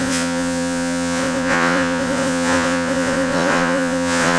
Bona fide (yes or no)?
no